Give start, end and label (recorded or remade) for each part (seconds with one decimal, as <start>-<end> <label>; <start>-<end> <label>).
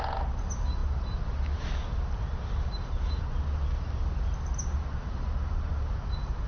0.0-6.5 recorded